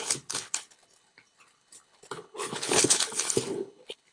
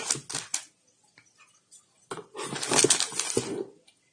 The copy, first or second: first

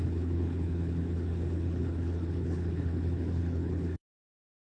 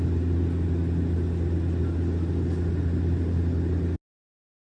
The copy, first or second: first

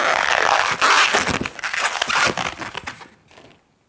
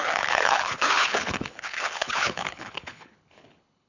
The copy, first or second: second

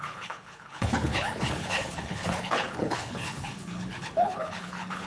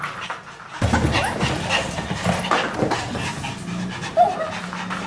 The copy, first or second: first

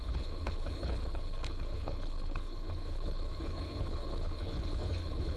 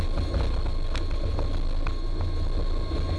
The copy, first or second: first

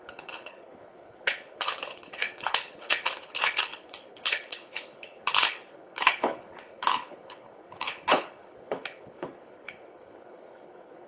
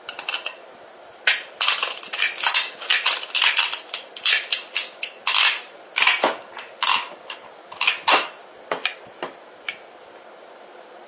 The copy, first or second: first